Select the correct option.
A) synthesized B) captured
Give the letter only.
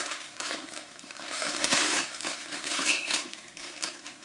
A